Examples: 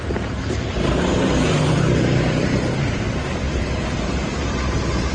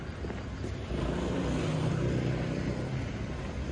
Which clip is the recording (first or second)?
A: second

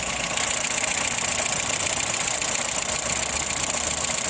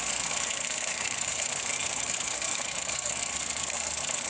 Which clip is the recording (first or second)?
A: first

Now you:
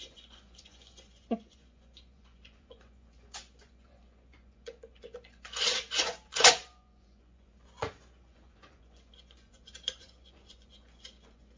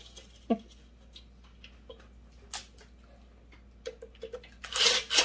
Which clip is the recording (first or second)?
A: second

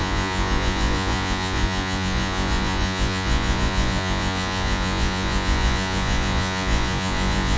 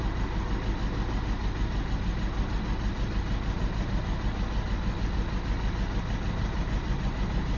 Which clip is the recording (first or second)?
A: second